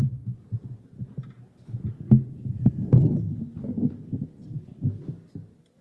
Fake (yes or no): no